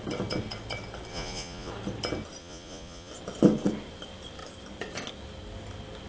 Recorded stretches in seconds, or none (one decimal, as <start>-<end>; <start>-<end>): 0.0-1.1; 1.7-2.4; 3.1-6.1